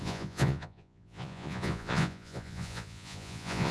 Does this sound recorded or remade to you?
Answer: remade